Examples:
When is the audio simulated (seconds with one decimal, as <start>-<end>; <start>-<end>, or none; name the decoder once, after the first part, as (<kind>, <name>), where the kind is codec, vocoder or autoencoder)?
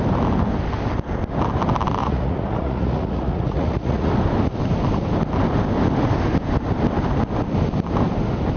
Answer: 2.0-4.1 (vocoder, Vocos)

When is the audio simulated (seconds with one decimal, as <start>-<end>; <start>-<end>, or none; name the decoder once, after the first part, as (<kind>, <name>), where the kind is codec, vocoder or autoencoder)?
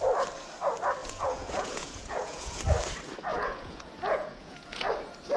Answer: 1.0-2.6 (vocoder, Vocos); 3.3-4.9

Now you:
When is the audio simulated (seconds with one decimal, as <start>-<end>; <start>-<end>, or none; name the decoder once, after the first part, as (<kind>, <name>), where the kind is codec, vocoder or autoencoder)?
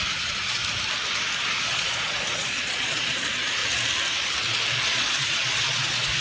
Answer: 0.0-0.6 (vocoder, Vocos); 1.5-3.6; 4.7-6.2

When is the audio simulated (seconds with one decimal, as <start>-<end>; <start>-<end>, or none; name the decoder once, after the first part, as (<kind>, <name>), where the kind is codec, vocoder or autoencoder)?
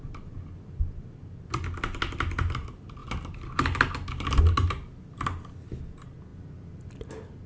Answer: none